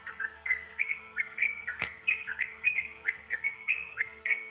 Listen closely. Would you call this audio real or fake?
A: fake